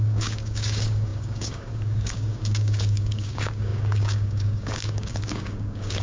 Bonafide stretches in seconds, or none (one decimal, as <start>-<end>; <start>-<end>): none